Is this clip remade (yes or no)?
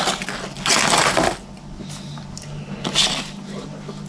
no